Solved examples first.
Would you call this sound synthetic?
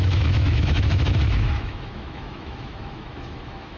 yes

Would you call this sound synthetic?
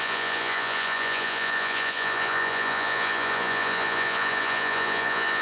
yes